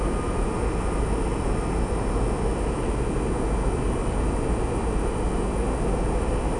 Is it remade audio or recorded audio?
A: recorded